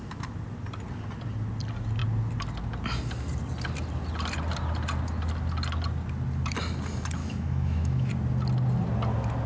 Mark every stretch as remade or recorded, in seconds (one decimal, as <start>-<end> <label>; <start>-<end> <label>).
0.0-7.2 recorded; 7.2-8.1 remade; 8.1-9.5 recorded